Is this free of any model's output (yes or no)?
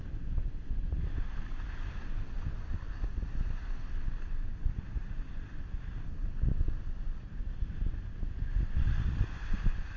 yes